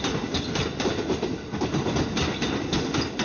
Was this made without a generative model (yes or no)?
yes